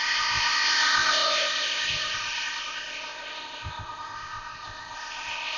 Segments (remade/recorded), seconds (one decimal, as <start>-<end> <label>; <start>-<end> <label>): 0.0-5.6 remade